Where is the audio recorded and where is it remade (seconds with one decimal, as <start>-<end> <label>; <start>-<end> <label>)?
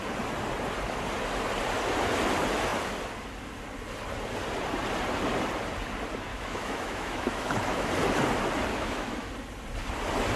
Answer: 0.0-6.3 recorded; 6.3-7.9 remade; 7.9-8.7 recorded; 8.7-9.3 remade; 9.3-10.4 recorded